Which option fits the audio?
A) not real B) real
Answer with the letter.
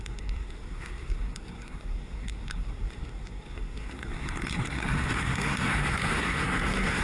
A